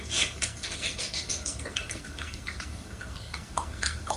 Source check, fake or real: fake